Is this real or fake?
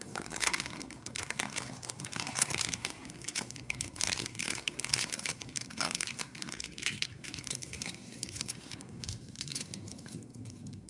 fake